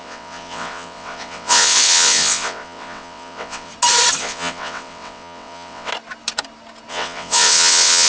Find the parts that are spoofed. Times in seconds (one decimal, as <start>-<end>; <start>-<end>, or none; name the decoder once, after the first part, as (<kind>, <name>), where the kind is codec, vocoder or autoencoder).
0.0-3.7 (vocoder, WaveNeXt); 4.2-5.9; 6.9-8.1